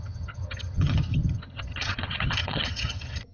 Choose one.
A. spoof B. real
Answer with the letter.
A